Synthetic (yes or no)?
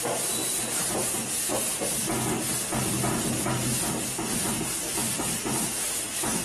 no